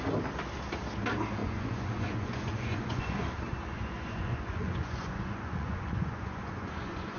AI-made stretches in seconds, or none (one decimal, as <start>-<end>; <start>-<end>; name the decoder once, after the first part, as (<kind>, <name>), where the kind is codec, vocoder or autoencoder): 1.4-3.2 (vocoder, Vocos); 3.7-7.2